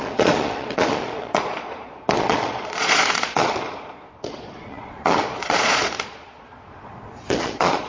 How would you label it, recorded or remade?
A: remade